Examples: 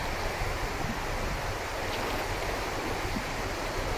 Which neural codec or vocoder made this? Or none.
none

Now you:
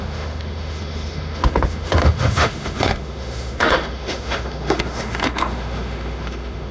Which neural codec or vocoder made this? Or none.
autoencoder, DAC-VAE